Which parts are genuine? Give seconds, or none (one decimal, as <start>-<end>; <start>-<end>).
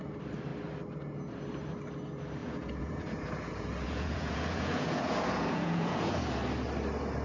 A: 0.0-2.4; 6.2-7.2